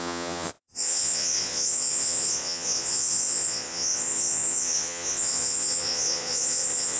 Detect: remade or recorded remade